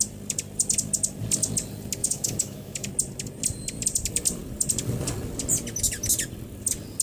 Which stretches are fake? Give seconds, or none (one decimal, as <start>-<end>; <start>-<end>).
2.0-2.9